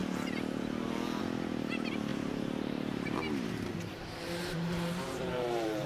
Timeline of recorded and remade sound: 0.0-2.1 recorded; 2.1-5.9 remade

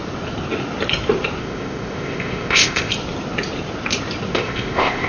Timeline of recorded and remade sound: 0.0-1.4 recorded; 1.4-2.9 remade; 2.9-4.3 recorded; 4.3-5.1 remade

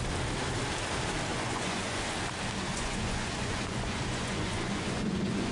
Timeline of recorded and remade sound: 0.0-1.3 recorded; 1.3-2.0 remade; 2.0-2.7 recorded; 2.7-5.5 remade

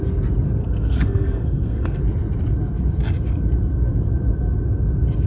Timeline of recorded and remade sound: 0.0-0.6 recorded; 0.6-2.0 remade; 2.0-5.3 recorded

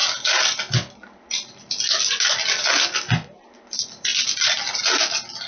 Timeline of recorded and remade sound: 0.0-5.5 recorded

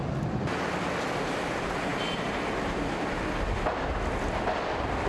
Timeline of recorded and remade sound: 0.0-5.1 recorded

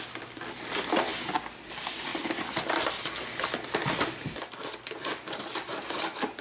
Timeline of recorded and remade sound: 0.0-6.4 recorded